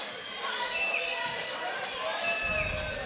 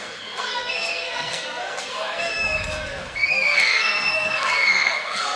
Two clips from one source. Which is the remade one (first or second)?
second